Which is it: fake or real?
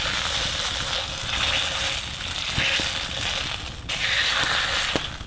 real